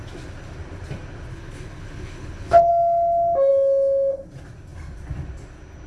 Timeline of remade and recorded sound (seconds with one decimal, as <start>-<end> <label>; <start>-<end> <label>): 0.0-1.3 recorded; 1.3-2.7 remade; 2.7-5.9 recorded